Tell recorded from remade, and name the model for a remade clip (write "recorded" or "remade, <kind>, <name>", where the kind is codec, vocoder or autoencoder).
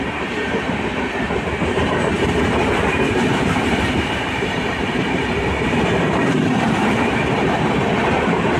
remade, vocoder, BigVGAN v2